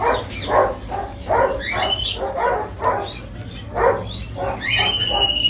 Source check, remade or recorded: recorded